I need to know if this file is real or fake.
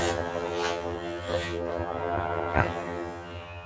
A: fake